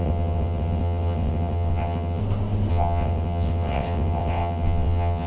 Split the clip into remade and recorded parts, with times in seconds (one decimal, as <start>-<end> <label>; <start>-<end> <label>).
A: 0.0-2.2 remade; 2.2-2.7 recorded; 2.7-5.3 remade